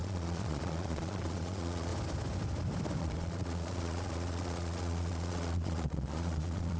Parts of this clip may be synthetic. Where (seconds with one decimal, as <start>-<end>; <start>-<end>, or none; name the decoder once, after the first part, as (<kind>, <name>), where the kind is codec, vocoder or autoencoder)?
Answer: 0.0-1.9 (vocoder, Vocos); 3.0-6.8